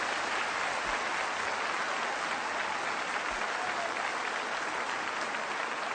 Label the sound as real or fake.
real